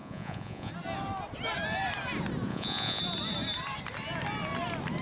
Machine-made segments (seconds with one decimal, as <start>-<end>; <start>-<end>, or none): 0.0-0.7; 2.5-3.0